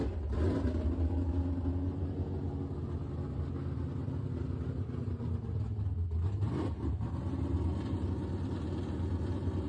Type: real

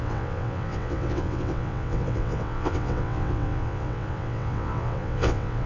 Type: fake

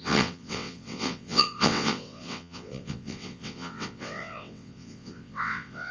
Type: fake